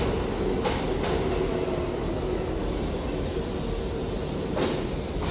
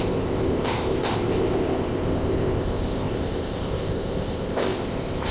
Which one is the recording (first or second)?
first